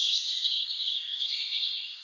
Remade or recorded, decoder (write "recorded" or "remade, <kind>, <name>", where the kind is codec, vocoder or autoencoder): remade, codec, SNAC